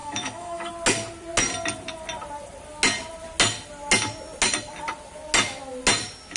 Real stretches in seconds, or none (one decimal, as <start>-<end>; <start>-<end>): 0.7-6.4